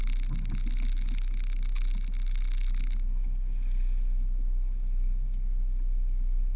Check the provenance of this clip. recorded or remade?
recorded